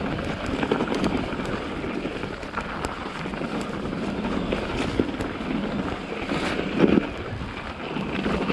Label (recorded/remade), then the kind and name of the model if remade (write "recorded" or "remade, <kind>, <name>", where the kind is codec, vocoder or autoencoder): recorded